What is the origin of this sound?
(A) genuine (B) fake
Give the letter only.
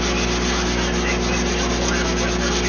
A